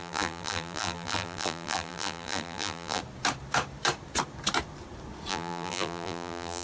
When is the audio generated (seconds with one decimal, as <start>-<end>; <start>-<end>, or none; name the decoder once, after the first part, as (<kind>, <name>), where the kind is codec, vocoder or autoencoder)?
0.0-3.0 (vocoder, BigVGAN v2); 5.3-6.6